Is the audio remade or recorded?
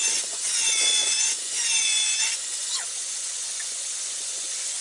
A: remade